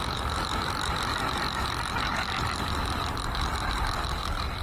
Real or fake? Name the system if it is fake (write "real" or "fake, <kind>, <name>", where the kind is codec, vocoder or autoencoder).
real